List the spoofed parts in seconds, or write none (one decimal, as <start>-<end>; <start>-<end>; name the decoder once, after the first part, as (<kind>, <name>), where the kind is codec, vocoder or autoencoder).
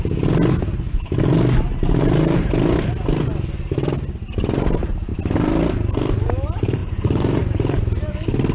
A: 6.8-7.4 (vocoder, Vocos)